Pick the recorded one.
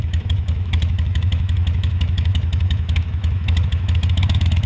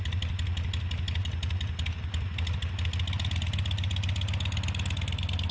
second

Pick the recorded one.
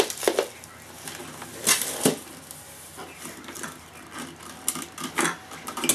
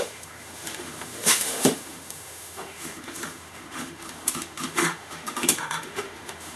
first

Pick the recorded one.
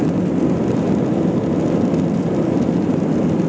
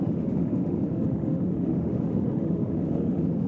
first